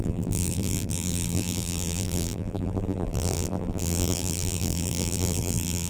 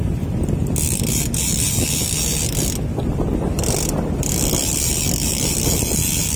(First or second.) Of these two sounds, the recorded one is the second